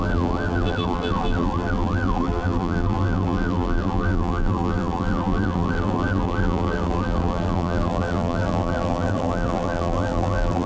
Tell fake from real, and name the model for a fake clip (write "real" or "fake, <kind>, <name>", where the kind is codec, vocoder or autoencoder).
fake, vocoder, BigVGAN v2